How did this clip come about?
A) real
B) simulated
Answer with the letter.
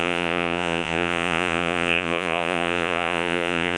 B